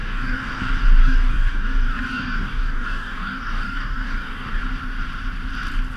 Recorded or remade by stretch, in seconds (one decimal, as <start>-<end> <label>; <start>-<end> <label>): 0.0-0.6 remade; 0.6-1.0 recorded; 1.0-4.6 remade; 4.6-6.0 recorded